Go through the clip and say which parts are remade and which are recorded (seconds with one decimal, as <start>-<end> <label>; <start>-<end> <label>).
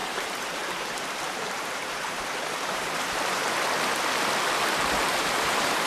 0.0-3.5 remade; 3.5-5.0 recorded; 5.0-5.9 remade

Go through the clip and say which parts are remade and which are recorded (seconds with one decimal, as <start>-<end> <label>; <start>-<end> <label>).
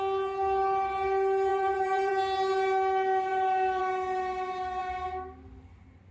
0.0-1.5 recorded; 1.5-2.1 remade; 2.1-6.1 recorded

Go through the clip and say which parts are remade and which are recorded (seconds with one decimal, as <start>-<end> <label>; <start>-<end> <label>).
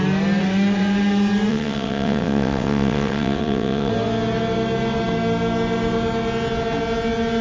0.0-1.5 recorded; 1.5-3.9 remade; 3.9-7.4 recorded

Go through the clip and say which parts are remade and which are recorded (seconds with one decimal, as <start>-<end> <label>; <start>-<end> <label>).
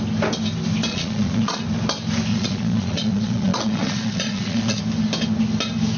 0.0-0.9 recorded; 0.9-1.6 remade; 1.6-2.3 recorded; 2.3-4.8 remade; 4.8-6.0 recorded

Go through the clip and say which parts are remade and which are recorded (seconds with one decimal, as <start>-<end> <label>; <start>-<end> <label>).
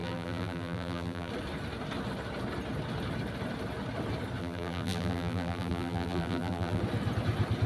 0.0-1.3 remade; 1.3-4.4 recorded; 4.4-6.8 remade; 6.8-7.7 recorded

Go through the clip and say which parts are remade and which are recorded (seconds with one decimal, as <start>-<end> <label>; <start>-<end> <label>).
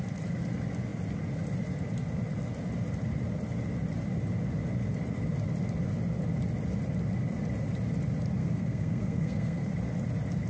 0.0-8.4 recorded; 8.4-9.7 remade; 9.7-10.5 recorded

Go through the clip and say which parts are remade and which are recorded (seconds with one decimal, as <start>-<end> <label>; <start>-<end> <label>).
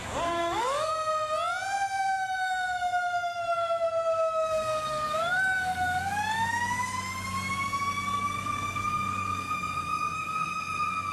0.0-0.9 remade; 0.9-2.0 recorded; 2.0-11.1 remade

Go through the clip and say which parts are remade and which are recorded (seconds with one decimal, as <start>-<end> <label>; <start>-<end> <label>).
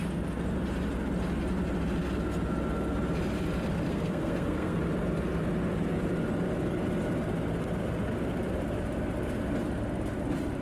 0.0-3.9 recorded; 3.9-4.8 remade; 4.8-10.6 recorded